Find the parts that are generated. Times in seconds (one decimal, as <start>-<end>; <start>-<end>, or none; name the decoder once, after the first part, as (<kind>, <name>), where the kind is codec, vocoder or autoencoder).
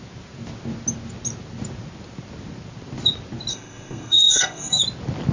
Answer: 3.5-4.8 (codec, SNAC)